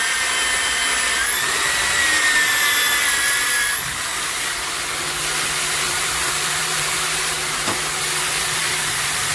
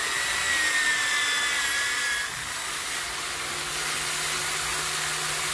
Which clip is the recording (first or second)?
second